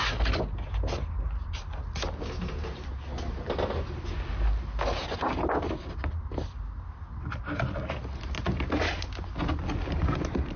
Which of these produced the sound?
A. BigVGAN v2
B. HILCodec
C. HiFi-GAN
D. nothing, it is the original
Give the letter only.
D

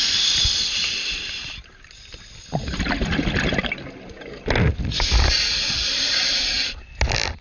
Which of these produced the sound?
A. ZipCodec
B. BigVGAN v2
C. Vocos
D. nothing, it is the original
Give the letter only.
D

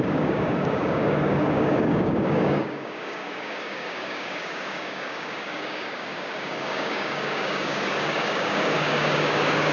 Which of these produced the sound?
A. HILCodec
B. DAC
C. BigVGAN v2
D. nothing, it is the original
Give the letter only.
B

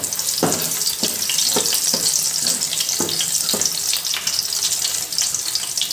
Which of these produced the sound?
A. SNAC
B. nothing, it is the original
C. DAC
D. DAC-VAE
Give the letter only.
B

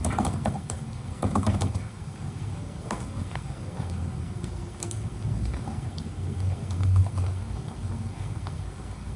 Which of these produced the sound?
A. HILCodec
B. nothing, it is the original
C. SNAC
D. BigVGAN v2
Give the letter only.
C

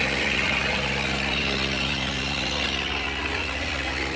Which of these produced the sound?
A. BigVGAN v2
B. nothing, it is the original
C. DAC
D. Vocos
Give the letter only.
D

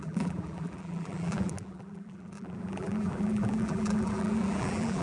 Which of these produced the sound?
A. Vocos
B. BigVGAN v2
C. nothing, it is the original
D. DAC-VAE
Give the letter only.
B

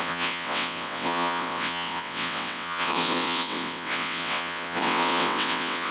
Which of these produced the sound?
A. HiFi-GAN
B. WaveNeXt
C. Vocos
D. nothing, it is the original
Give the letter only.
B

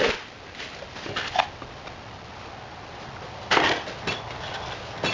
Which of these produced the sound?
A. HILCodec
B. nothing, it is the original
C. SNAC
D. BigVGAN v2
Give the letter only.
B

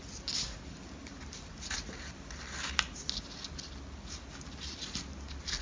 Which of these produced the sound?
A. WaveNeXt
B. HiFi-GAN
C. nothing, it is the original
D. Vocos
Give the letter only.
C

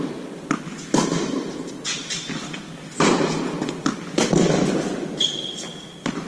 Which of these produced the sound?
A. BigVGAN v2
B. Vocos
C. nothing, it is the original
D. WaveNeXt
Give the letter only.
C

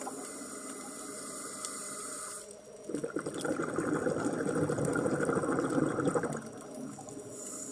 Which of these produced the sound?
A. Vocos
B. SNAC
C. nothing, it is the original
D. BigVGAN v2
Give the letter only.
C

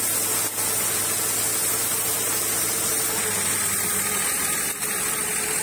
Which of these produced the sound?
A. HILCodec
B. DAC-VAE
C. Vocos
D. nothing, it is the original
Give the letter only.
D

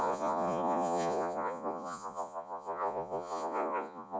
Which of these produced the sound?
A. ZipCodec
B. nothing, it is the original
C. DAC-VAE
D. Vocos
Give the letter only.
D